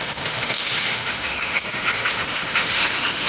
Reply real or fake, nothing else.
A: fake